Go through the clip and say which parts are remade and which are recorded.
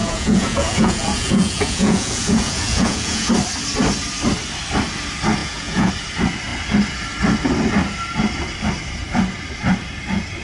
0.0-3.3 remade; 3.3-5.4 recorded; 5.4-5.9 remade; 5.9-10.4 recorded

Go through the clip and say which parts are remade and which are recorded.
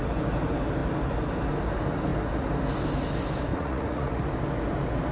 0.0-3.5 recorded; 3.5-4.2 remade; 4.2-5.1 recorded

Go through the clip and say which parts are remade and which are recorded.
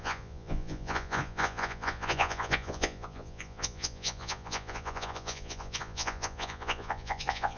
0.0-7.6 remade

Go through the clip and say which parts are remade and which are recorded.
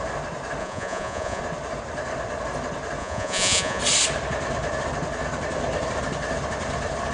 0.0-0.6 recorded; 0.6-1.4 remade; 1.4-3.0 recorded; 3.0-3.8 remade; 3.8-7.1 recorded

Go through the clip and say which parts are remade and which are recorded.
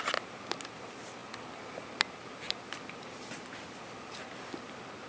0.0-5.1 recorded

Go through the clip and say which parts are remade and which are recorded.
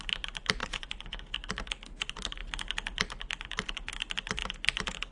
0.0-0.6 recorded; 0.6-1.2 remade; 1.2-5.1 recorded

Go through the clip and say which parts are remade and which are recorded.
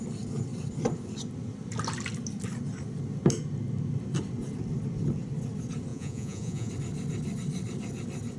0.0-5.9 recorded; 5.9-6.7 remade; 6.7-8.4 recorded